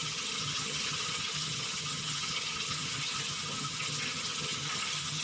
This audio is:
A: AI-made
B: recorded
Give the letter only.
A